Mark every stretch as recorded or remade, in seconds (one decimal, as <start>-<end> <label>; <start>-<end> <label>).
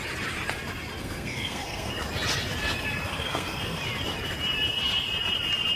0.0-1.0 recorded; 1.0-1.9 remade; 1.9-3.1 recorded; 3.1-3.8 remade; 3.8-5.8 recorded